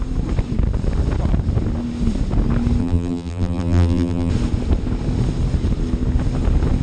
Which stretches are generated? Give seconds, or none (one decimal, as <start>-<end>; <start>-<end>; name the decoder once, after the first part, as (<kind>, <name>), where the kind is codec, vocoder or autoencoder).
2.8-4.3 (vocoder, BigVGAN v2)